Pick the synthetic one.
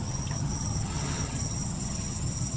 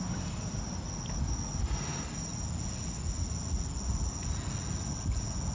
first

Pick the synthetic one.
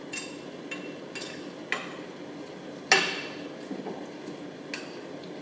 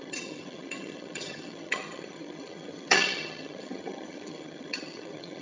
second